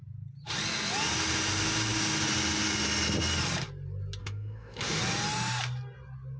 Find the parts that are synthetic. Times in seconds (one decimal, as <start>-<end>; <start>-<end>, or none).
4.2-5.0